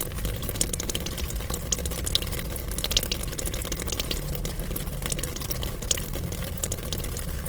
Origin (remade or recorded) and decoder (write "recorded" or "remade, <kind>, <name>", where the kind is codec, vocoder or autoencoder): recorded